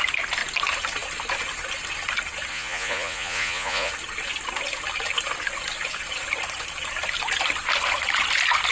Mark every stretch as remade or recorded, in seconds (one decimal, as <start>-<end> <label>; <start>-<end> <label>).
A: 0.0-2.5 recorded; 2.5-3.9 remade; 3.9-8.7 recorded